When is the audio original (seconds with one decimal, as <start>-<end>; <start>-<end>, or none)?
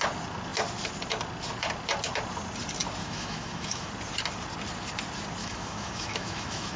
0.0-3.0; 3.9-5.4